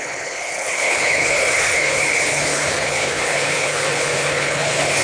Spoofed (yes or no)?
yes